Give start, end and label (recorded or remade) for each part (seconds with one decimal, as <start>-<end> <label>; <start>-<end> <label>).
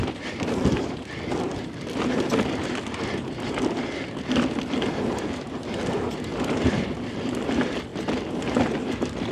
0.0-9.3 recorded